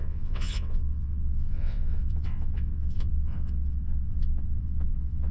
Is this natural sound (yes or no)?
no